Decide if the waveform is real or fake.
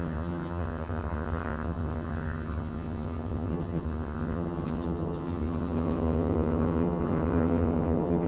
fake